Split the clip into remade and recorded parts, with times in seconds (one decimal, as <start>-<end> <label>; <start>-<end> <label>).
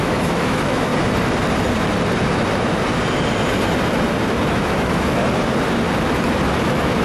0.0-0.9 remade; 0.9-4.5 recorded; 4.5-5.2 remade; 5.2-6.6 recorded; 6.6-7.0 remade